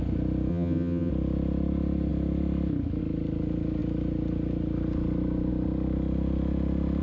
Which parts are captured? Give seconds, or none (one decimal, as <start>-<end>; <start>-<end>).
0.0-0.5; 1.1-7.0